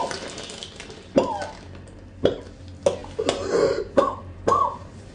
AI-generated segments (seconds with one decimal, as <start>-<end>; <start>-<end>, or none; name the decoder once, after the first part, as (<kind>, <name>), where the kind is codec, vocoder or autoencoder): 0.6-1.1 (vocoder, BigVGAN v2)